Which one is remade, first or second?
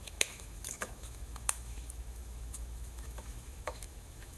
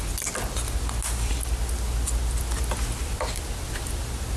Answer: first